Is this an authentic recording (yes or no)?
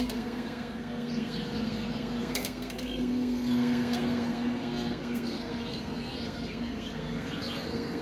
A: no